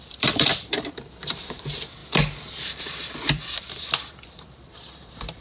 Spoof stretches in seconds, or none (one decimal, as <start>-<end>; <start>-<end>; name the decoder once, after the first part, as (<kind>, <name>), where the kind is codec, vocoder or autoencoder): 0.0-5.4 (vocoder, BigVGAN v2)